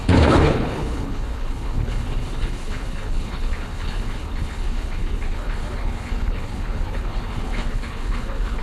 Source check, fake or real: fake